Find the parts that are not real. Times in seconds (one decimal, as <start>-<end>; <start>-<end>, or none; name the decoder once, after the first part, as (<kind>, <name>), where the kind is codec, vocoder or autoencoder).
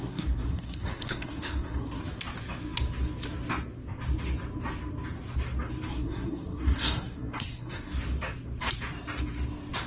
0.0-2.0 (codec, SNAC); 5.9-8.0